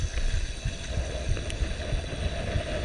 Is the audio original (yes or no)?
yes